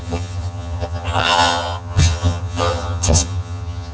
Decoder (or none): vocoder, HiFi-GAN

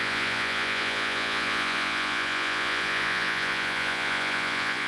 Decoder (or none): vocoder, Vocos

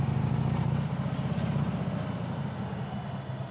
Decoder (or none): none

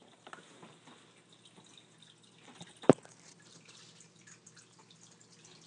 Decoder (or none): none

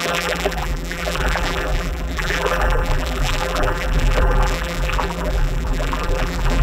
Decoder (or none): vocoder, BigVGAN v2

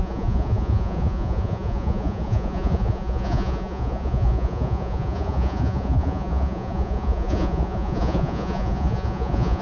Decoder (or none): vocoder, Vocos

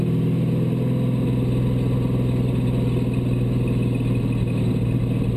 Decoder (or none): none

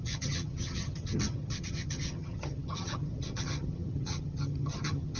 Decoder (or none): vocoder, HiFi-GAN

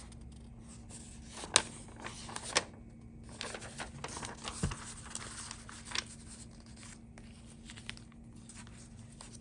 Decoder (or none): none